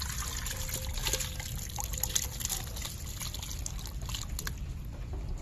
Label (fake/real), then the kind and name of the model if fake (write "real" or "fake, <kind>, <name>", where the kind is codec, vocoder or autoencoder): real